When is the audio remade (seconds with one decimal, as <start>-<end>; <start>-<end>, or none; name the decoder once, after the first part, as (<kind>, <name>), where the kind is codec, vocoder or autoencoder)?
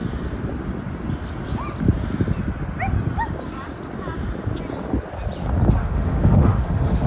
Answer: 5.8-7.1 (autoencoder, DAC-VAE)